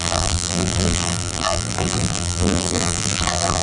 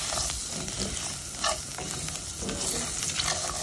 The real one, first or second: second